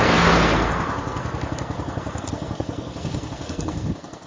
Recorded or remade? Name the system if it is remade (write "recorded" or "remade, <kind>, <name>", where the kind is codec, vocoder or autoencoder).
remade, codec, SNAC